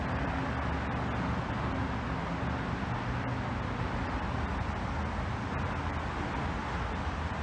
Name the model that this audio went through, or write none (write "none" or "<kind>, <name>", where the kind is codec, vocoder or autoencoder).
none